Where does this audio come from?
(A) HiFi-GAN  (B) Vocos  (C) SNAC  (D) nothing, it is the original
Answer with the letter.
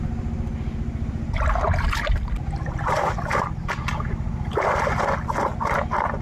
D